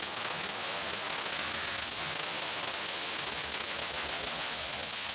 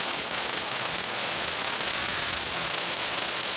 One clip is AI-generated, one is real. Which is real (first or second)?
first